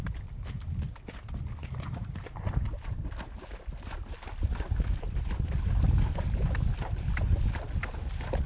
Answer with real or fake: real